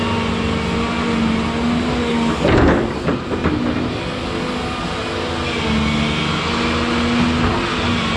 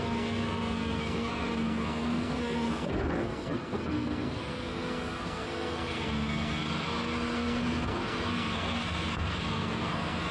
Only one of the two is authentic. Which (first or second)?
first